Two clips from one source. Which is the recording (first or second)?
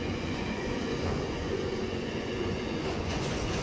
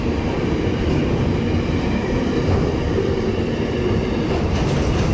second